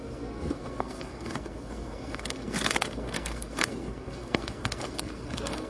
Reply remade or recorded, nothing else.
remade